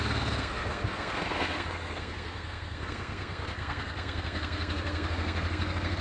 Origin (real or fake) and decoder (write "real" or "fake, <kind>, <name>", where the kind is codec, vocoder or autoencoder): fake, codec, SNAC